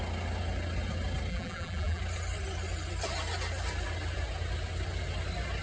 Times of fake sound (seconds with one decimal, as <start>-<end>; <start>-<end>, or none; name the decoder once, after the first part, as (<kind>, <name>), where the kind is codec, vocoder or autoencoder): 1.3-2.0 (vocoder, BigVGAN v2)